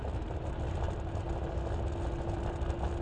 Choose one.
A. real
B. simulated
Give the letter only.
A